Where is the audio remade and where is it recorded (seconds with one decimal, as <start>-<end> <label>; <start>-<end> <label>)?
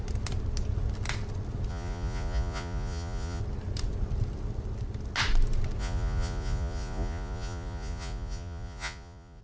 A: 0.0-1.7 recorded; 1.7-3.4 remade; 3.4-5.8 recorded; 5.8-9.4 remade